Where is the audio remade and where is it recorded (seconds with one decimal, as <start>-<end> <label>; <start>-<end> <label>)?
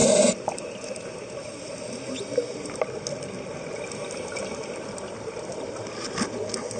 0.0-6.8 recorded